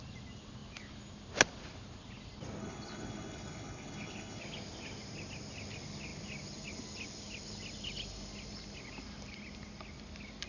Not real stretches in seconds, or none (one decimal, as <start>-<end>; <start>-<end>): 2.6-4.4